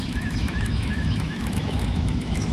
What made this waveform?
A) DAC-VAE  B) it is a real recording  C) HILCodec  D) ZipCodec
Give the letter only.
A